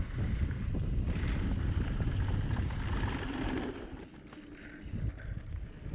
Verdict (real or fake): real